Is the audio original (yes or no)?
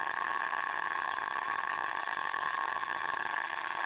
no